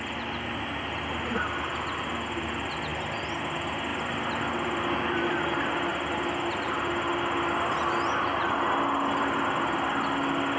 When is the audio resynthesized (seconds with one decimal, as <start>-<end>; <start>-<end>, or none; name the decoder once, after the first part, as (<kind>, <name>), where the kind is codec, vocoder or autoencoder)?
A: none